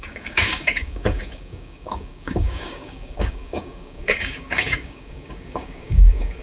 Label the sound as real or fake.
fake